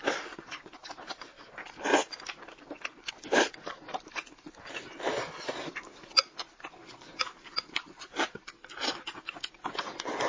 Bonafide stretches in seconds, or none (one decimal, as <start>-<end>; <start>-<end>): 0.0-10.3